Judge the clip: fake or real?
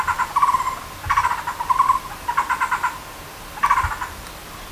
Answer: real